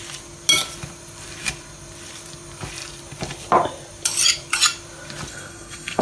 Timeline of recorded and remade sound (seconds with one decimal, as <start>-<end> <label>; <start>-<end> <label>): 0.0-5.3 recorded; 5.3-6.0 remade